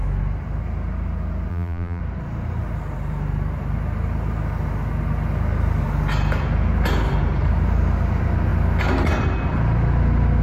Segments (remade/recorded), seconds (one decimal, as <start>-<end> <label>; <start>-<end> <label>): 0.0-1.5 recorded; 1.5-2.0 remade; 2.0-10.4 recorded